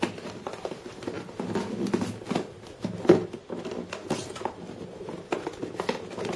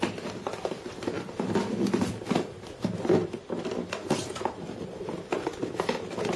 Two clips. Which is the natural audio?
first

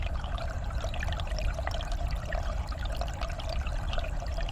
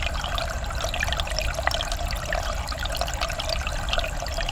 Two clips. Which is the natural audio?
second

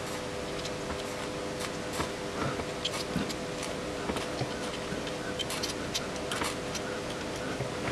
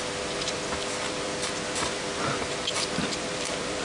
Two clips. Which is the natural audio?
first